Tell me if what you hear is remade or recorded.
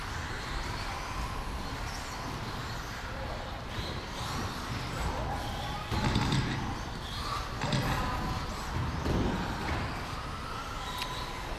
recorded